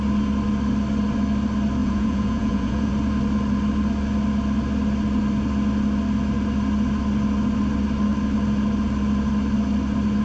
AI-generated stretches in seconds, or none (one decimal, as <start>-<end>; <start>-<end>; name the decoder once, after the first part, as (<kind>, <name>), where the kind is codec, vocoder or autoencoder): 1.8-2.9 (vocoder, Vocos)